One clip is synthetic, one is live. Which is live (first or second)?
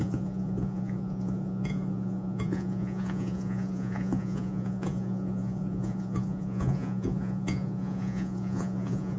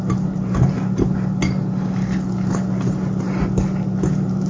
second